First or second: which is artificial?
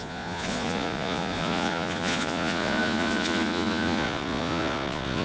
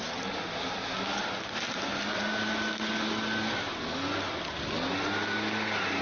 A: first